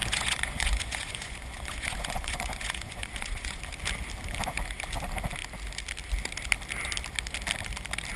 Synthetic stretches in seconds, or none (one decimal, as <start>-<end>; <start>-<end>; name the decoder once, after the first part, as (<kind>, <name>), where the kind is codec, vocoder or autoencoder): 0.0-3.6 (vocoder, Vocos)